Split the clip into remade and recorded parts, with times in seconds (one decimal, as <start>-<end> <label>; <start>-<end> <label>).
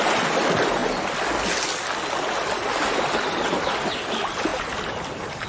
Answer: 0.0-5.5 recorded